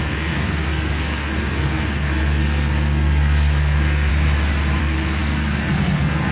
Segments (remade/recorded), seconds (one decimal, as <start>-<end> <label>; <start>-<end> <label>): 0.0-4.1 remade; 4.1-4.8 recorded; 4.8-6.3 remade